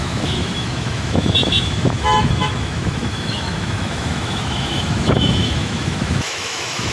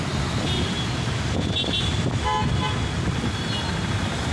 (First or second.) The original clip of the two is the second